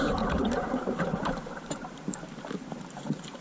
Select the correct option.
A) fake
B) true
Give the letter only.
A